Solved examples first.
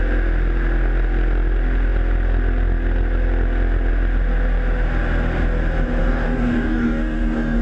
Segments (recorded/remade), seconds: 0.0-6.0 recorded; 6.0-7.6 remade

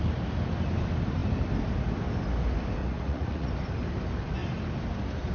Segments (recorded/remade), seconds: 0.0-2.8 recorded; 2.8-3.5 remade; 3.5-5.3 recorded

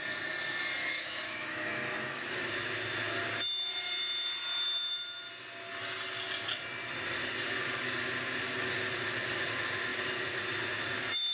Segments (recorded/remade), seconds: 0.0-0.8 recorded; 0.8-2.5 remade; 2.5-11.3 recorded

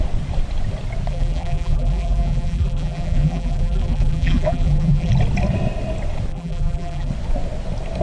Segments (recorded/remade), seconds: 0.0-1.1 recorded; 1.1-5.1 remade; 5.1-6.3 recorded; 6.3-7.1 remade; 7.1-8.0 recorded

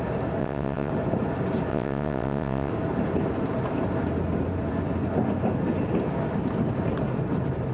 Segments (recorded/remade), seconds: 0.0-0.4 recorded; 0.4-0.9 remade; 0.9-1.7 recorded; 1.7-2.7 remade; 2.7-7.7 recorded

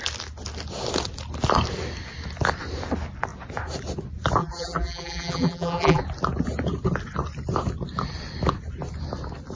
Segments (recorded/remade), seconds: 0.0-4.4 recorded; 4.4-6.0 remade; 6.0-9.6 recorded

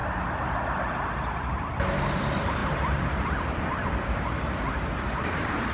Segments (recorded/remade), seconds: 0.0-1.3 recorded; 1.3-5.7 remade

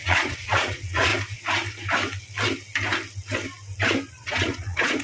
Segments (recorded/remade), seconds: 0.0-1.1 remade; 1.1-4.1 recorded; 4.1-5.0 remade